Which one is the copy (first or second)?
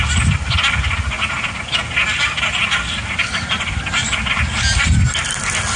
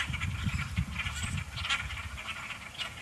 second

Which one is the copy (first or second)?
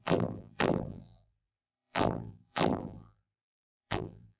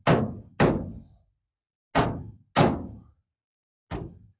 first